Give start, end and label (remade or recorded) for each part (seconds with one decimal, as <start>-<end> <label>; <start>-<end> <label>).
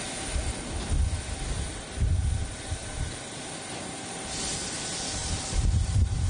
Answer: 0.0-2.8 recorded; 2.8-4.4 remade; 4.4-5.2 recorded; 5.2-6.3 remade